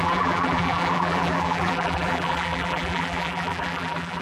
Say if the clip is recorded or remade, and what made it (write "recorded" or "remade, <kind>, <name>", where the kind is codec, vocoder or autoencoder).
remade, vocoder, BigVGAN v2